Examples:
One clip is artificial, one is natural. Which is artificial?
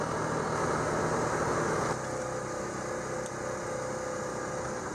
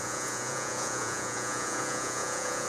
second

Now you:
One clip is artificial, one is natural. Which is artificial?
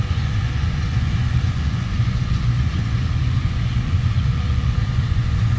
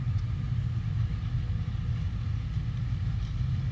first